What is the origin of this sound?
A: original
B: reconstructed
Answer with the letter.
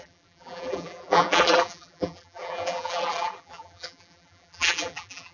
B